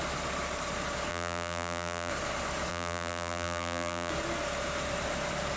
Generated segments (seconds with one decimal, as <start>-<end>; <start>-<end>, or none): 1.1-2.1; 2.7-4.1